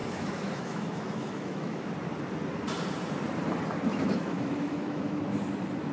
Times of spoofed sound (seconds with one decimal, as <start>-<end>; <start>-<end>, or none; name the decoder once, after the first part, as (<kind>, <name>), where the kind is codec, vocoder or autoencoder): 0.0-1.9 (autoencoder, DAC-VAE); 3.9-5.2